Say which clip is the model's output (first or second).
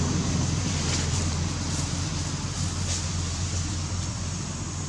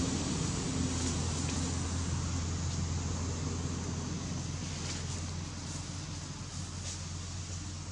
first